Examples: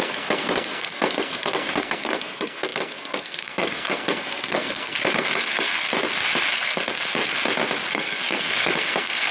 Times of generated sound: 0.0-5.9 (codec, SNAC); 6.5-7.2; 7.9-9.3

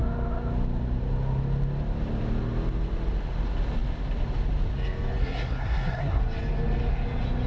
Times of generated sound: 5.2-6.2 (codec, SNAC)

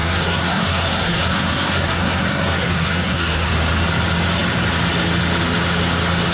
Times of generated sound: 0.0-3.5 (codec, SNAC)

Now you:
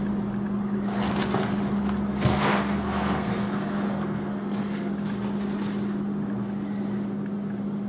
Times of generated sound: 2.1-4.9 (codec, SNAC)